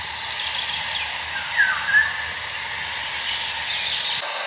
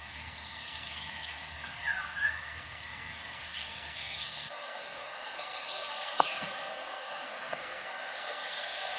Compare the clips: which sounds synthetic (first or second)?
second